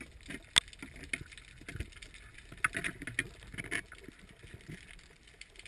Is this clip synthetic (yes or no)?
no